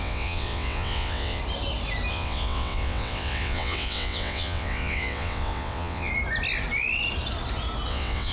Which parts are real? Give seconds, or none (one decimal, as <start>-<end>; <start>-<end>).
1.4-2.1; 6.1-7.9